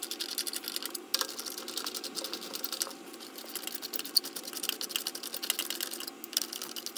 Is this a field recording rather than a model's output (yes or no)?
yes